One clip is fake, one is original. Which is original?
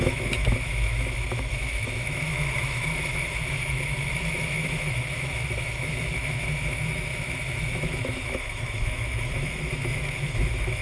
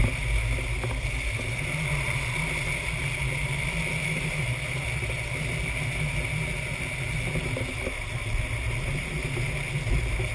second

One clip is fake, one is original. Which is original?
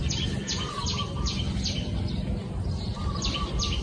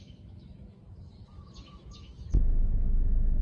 first